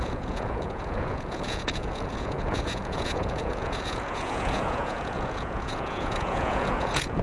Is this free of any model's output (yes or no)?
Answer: no